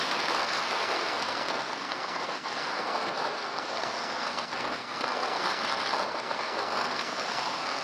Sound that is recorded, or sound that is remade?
remade